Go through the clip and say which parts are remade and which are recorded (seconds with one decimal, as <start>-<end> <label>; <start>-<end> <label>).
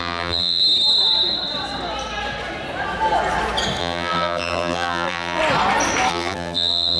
0.0-0.6 remade; 0.6-3.8 recorded; 3.8-5.4 remade; 5.4-6.1 recorded; 6.1-7.0 remade